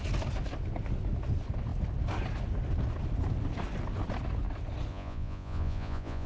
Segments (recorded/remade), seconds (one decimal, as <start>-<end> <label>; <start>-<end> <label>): 0.0-4.9 recorded; 4.9-6.3 remade

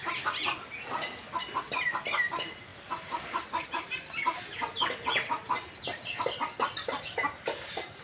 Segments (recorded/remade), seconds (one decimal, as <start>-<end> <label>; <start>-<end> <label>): 0.0-2.7 recorded; 2.7-4.4 remade; 4.4-8.0 recorded

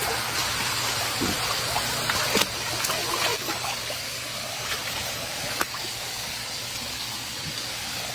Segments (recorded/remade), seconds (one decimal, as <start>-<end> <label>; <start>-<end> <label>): 0.0-3.3 recorded; 3.3-8.1 remade